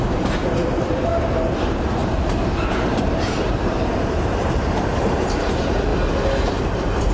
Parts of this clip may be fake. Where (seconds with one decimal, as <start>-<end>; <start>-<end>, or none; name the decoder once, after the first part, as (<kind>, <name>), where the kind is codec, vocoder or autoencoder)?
0.0-1.1 (vocoder, BigVGAN v2); 1.6-5.9; 6.5-7.1